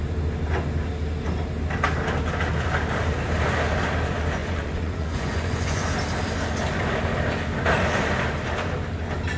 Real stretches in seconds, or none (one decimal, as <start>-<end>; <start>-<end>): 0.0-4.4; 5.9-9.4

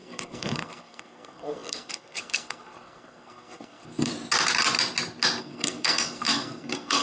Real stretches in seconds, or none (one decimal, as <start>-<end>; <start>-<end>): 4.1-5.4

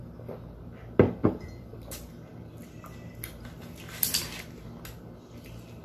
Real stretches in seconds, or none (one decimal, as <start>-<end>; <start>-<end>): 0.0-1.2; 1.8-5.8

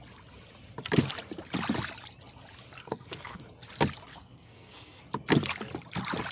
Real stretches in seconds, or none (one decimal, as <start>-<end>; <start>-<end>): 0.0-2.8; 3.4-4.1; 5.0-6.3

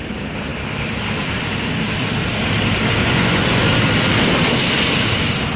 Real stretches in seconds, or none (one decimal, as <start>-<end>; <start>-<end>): 0.0-3.0; 3.6-5.6

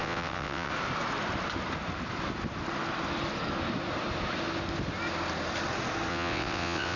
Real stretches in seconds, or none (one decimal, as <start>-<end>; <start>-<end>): 0.7-6.1

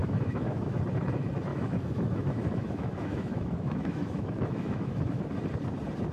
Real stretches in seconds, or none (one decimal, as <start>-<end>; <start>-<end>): 0.8-1.5; 5.2-6.1

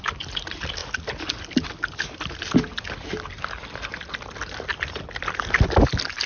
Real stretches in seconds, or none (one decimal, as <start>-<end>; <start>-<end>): 0.0-6.3